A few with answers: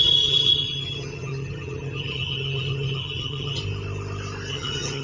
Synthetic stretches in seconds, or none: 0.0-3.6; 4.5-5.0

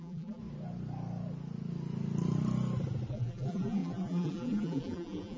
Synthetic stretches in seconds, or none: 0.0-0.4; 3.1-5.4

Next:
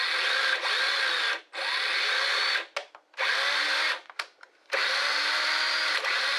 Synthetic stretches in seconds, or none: none